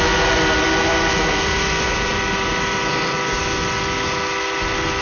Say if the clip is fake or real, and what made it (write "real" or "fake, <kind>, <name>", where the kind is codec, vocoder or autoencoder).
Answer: real